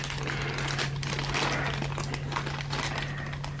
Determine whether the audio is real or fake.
real